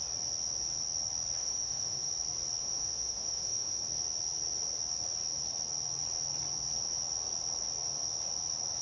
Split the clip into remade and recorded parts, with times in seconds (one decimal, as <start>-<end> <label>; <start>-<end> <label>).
0.0-1.4 recorded; 1.4-2.1 remade; 2.1-2.6 recorded; 2.6-3.8 remade; 3.8-8.8 recorded